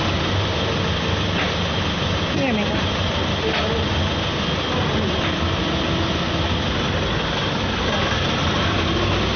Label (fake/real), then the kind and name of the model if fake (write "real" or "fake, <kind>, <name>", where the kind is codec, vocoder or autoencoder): real